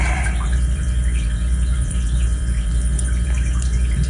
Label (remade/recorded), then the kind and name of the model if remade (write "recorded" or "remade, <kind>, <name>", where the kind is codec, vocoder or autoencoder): remade, vocoder, BigVGAN v2